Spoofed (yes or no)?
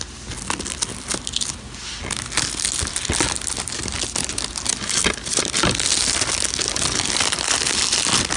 no